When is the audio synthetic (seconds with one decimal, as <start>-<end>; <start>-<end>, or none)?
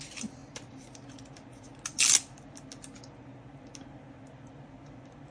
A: none